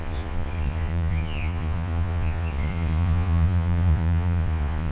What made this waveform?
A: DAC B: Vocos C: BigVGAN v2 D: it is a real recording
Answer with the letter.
B